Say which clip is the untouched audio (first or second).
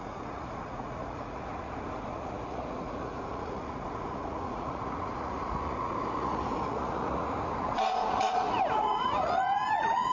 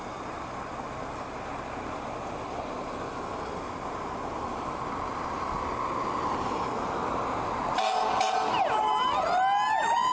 second